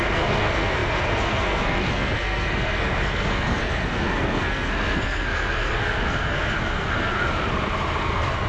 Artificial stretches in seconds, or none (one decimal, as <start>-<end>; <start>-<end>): 0.0-7.3; 8.0-8.5